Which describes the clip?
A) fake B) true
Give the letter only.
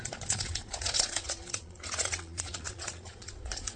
A